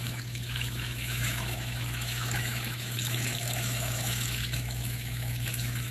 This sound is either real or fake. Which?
fake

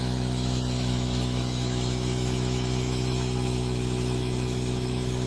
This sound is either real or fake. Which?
fake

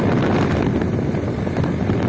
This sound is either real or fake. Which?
real